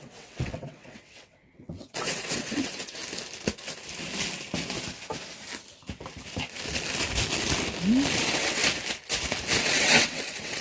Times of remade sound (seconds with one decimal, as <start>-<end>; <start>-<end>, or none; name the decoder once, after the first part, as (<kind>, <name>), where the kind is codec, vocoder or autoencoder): 0.0-3.0 (vocoder, WaveNeXt); 8.2-8.6; 9.6-10.6